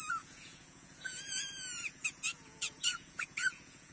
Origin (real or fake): fake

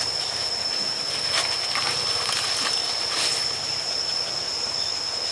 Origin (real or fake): real